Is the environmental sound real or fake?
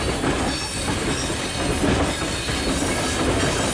real